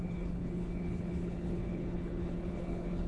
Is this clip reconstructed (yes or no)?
yes